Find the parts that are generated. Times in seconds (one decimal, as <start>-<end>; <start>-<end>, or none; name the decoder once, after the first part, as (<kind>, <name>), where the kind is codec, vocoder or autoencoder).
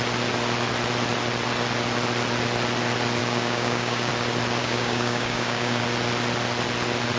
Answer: 3.2-4.1 (codec, DAC); 4.6-5.8